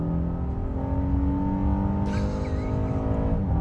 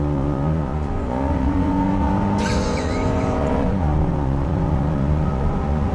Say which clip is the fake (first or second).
second